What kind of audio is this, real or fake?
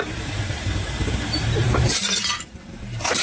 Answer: fake